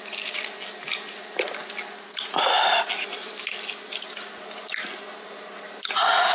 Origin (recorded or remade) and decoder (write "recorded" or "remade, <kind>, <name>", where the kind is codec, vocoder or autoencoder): recorded